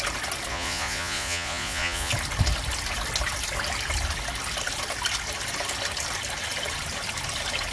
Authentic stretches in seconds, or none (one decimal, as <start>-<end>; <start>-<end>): 0.0-0.5; 2.1-7.7